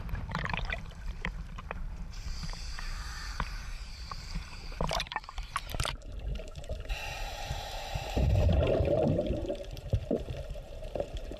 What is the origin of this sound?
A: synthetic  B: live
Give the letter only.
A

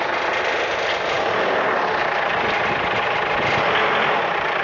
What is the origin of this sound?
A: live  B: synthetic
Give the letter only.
B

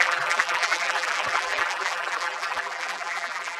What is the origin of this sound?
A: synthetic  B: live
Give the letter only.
A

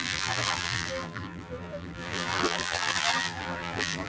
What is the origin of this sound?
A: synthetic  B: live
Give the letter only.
A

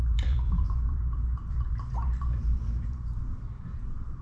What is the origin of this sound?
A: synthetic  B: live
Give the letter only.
A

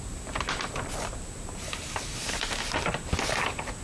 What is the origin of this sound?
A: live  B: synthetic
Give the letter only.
B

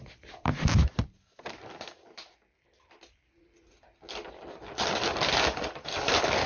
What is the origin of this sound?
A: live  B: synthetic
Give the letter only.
A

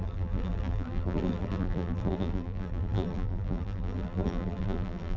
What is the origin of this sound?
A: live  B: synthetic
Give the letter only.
B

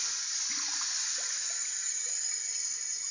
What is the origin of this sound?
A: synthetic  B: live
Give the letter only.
B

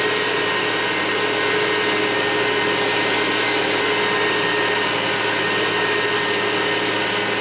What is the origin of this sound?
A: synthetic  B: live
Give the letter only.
B